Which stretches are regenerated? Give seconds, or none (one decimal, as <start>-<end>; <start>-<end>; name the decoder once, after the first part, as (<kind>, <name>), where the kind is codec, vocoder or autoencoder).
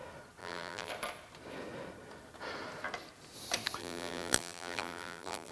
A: 0.4-0.9 (vocoder, BigVGAN v2); 3.8-5.5